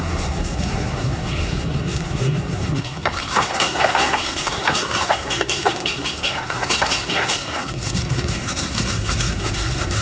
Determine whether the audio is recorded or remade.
remade